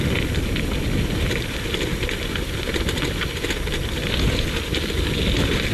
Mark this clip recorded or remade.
recorded